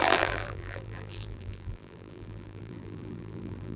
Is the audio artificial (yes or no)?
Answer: yes